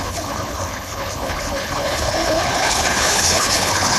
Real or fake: fake